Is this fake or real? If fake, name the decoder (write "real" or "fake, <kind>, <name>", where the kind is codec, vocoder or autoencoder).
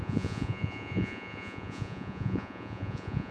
fake, vocoder, Vocos